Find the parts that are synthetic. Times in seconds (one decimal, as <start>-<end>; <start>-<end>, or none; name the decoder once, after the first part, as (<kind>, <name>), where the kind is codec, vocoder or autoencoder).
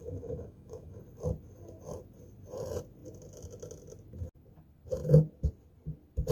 0.0-1.0 (autoencoder, DAC-VAE)